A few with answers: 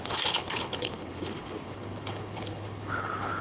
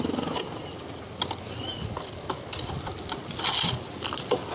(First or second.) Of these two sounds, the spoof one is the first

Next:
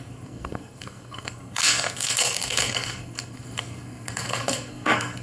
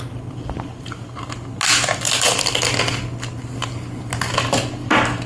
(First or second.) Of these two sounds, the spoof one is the first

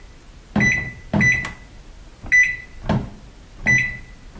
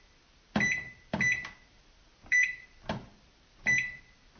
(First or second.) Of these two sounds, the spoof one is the second